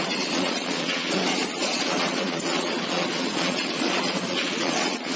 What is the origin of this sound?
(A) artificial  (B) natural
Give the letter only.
A